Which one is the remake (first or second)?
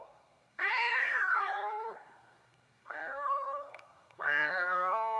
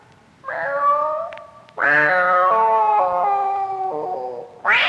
first